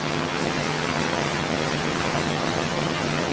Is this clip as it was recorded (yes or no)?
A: no